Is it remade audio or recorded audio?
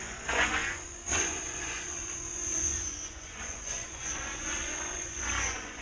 remade